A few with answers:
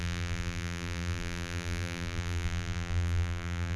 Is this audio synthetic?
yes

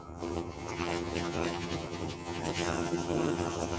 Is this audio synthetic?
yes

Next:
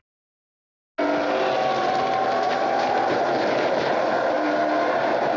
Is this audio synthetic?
no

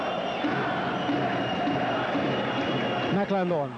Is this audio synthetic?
no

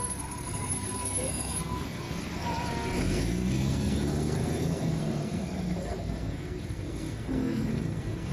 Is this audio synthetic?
yes